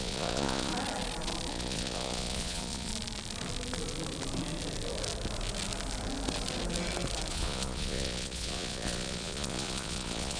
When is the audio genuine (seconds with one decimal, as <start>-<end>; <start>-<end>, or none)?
0.7-1.5; 2.9-7.3